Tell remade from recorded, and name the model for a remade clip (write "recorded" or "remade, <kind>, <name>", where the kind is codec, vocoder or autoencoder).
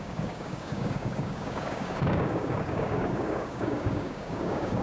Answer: remade, codec, DAC